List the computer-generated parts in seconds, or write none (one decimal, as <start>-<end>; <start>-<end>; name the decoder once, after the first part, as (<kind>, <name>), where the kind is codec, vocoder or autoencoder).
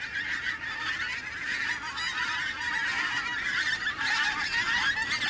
none